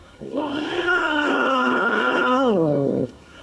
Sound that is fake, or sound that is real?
fake